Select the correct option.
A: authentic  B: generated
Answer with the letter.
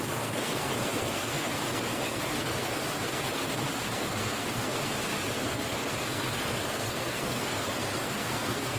B